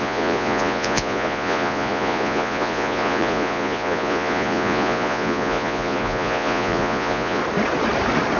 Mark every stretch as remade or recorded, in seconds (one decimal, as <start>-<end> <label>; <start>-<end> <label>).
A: 0.0-7.4 remade; 7.4-8.4 recorded